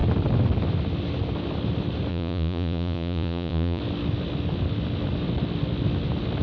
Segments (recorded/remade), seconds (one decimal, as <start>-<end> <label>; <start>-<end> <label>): 0.0-2.1 recorded; 2.1-3.8 remade; 3.8-6.4 recorded

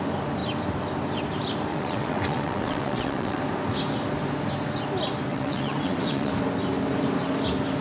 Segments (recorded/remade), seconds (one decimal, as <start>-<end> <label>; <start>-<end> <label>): 0.0-1.7 recorded; 1.7-3.4 remade; 3.4-5.3 recorded; 5.3-6.3 remade; 6.3-7.8 recorded

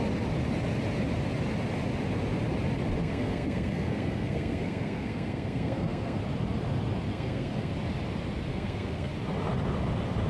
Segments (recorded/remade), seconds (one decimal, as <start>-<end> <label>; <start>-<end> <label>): 0.0-3.0 recorded; 3.0-6.2 remade; 6.2-7.1 recorded; 7.1-7.7 remade; 7.7-8.5 recorded; 8.5-9.1 remade; 9.1-10.3 recorded